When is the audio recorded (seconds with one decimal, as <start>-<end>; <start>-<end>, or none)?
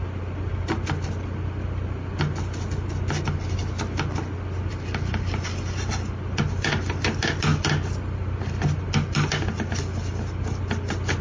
0.0-11.2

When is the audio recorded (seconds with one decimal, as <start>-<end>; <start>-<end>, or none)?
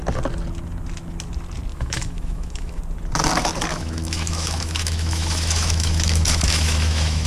0.0-1.7; 2.8-3.7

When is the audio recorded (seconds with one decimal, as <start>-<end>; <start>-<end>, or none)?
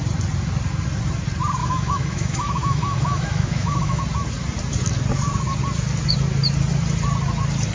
0.0-1.6; 4.0-7.7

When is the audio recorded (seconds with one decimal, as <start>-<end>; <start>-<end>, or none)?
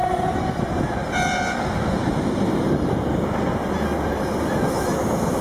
0.0-5.4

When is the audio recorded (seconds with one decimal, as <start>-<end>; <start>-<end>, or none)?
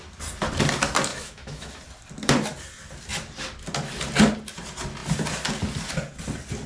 0.0-1.1; 1.8-6.7